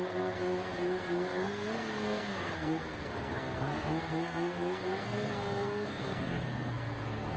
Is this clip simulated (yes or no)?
yes